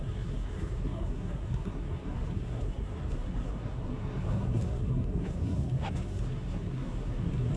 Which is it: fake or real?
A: fake